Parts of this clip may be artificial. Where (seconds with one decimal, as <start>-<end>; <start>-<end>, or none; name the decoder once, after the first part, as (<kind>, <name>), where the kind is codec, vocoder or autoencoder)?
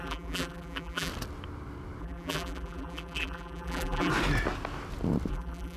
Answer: 0.0-1.1 (vocoder, BigVGAN v2); 2.0-4.1; 5.3-5.8